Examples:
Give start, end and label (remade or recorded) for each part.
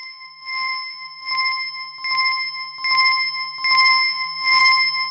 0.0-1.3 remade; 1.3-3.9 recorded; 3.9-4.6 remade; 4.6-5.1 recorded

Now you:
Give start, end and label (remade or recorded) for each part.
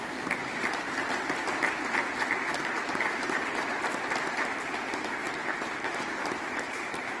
0.0-2.8 recorded; 2.8-3.8 remade; 3.8-5.4 recorded; 5.4-7.2 remade